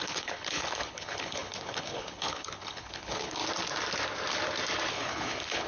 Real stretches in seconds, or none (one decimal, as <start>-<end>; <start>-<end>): 3.4-4.9